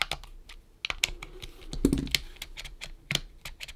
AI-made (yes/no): no